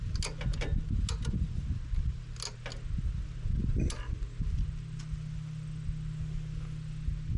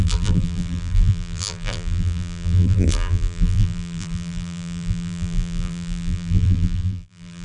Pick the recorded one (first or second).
first